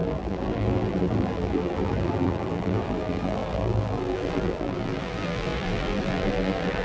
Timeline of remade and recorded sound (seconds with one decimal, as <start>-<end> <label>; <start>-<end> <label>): 0.0-6.8 remade